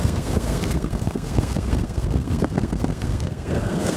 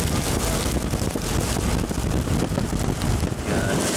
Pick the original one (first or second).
second